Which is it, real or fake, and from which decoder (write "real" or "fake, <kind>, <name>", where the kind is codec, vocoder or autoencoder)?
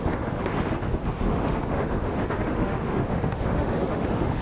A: fake, autoencoder, DAC-VAE